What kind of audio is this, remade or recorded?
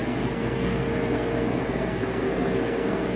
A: remade